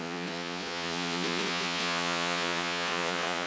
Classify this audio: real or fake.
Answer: fake